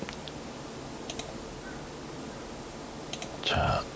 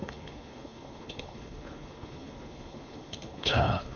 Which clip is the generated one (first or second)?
second